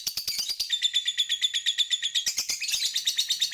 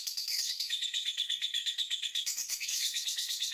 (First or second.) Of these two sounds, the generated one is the second